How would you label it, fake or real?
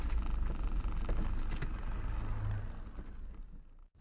real